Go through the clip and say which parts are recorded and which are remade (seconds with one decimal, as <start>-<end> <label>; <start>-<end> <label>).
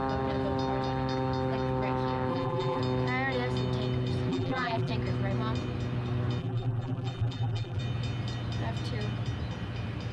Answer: 0.0-2.3 recorded; 2.3-2.8 remade; 2.8-4.3 recorded; 4.3-4.9 remade; 4.9-6.4 recorded; 6.4-7.8 remade; 7.8-10.1 recorded